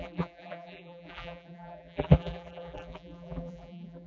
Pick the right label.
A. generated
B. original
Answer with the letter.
A